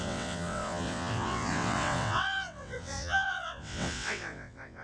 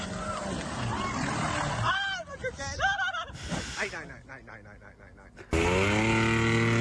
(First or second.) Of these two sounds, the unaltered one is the second